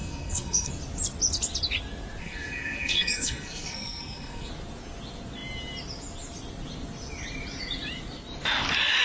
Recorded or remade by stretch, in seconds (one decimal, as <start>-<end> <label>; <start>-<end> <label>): 0.0-0.7 remade; 0.7-2.2 recorded; 2.2-4.5 remade; 4.5-9.0 recorded